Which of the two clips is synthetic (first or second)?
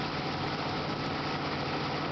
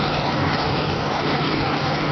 second